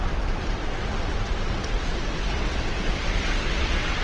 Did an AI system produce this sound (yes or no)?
yes